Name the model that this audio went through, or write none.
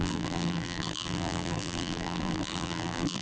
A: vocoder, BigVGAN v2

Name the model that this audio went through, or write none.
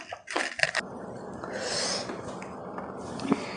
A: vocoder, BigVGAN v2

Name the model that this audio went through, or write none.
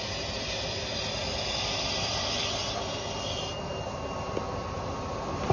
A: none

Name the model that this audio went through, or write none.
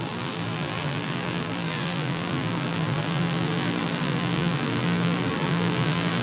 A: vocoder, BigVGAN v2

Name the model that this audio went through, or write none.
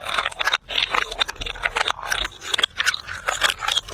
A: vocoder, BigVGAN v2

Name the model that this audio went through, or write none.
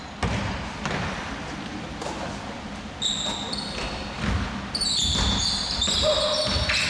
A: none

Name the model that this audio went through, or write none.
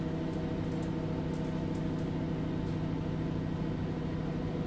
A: none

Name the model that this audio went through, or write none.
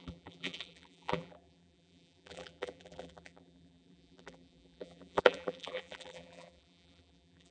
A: vocoder, BigVGAN v2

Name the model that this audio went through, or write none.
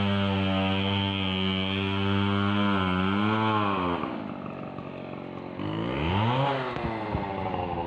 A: none